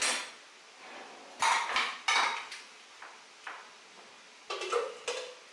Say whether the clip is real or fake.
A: real